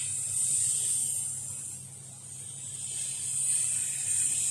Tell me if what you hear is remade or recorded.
recorded